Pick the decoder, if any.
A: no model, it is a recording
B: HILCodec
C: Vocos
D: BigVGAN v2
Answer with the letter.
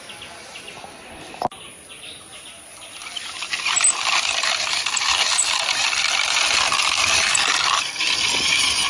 A